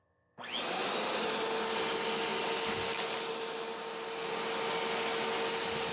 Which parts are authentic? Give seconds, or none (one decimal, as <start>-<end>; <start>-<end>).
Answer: 0.0-5.9